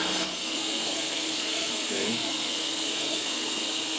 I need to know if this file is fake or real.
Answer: fake